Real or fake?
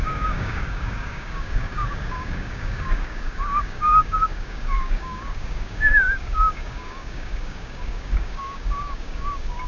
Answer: fake